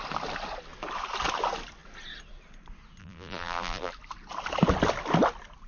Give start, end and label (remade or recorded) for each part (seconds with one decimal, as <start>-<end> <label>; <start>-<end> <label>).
0.0-3.0 recorded; 3.0-3.9 remade; 3.9-5.7 recorded